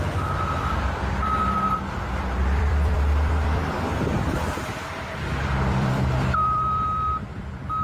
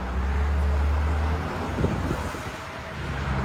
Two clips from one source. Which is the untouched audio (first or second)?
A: second